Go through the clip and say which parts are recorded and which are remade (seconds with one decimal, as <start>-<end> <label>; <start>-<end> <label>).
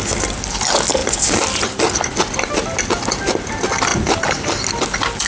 0.0-5.3 recorded